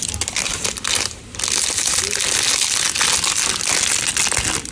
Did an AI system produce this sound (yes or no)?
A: no